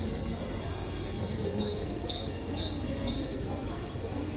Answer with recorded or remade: remade